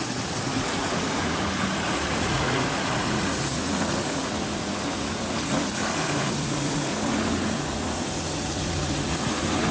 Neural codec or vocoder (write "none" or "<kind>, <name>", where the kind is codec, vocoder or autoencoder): vocoder, Vocos